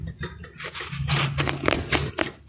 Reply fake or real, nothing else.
real